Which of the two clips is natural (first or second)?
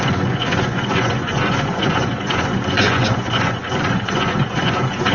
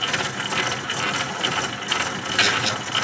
second